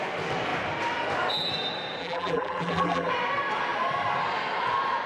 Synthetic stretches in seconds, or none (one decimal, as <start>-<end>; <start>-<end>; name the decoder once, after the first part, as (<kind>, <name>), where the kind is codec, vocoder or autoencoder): 2.0-3.1 (vocoder, BigVGAN v2)